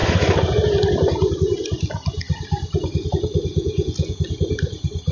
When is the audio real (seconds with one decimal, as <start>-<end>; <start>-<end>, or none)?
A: 0.0-3.5; 4.2-5.1